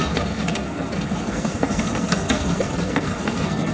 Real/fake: fake